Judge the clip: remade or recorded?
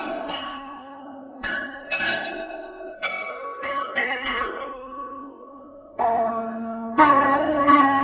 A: remade